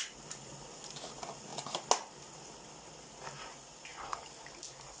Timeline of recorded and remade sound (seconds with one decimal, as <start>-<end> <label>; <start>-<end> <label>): 0.0-5.0 recorded